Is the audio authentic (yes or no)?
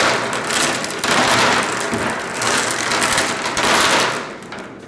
yes